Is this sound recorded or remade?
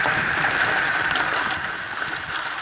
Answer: recorded